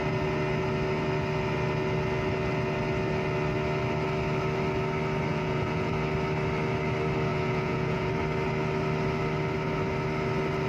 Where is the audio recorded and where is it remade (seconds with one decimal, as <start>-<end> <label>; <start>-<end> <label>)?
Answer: 0.0-5.3 recorded; 5.3-5.9 remade; 5.9-7.3 recorded; 7.3-8.1 remade; 8.1-10.7 recorded